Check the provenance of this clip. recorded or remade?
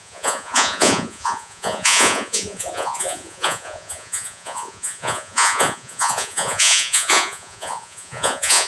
remade